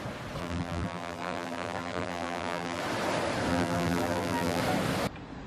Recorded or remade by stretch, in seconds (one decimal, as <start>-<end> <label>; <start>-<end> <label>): 0.0-0.4 recorded; 0.4-2.8 remade; 2.8-3.5 recorded; 3.5-4.6 remade; 4.6-5.5 recorded